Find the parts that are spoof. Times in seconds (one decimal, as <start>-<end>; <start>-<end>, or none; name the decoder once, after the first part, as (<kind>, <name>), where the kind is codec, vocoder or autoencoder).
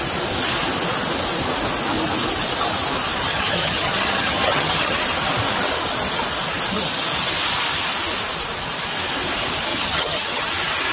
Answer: 3.3-5.0 (vocoder, HiFi-GAN); 9.7-10.4